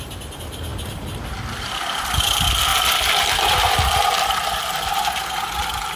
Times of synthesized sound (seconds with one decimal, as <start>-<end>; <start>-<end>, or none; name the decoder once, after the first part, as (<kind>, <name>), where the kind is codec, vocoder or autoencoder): none